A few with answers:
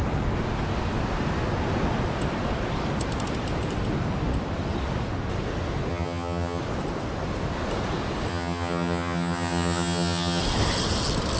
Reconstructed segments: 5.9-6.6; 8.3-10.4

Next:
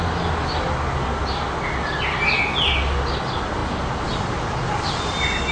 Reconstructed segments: none

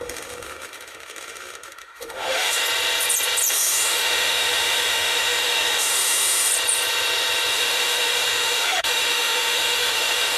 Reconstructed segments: 0.0-2.6; 3.5-6.5; 7.5-10.4

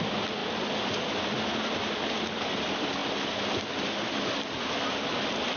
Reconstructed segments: none

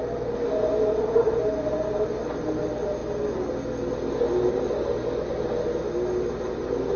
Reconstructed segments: none

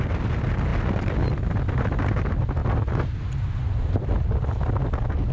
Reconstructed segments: none